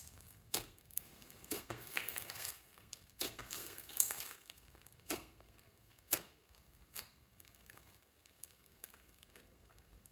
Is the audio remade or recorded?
remade